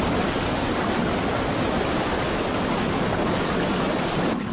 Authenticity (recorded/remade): recorded